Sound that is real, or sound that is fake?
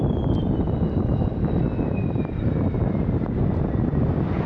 real